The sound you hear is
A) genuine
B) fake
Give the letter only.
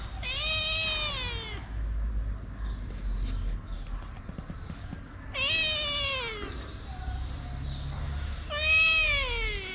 A